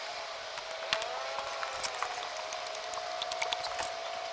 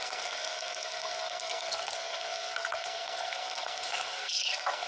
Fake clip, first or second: second